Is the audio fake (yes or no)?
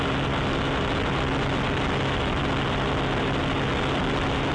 no